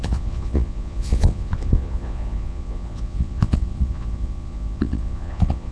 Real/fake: fake